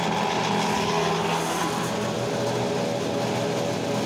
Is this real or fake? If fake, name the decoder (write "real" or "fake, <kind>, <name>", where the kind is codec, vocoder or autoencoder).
real